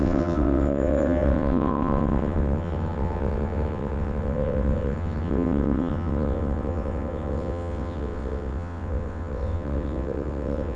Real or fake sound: fake